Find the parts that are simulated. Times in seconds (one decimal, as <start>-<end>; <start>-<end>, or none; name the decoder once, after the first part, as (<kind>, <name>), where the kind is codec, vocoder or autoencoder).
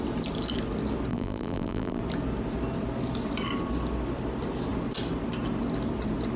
1.1-2.0 (vocoder, BigVGAN v2)